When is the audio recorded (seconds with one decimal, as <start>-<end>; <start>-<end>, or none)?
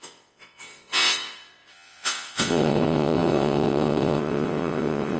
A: none